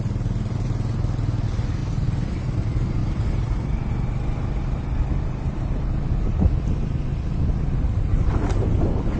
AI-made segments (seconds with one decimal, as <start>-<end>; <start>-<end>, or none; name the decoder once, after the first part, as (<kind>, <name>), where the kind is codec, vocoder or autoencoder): none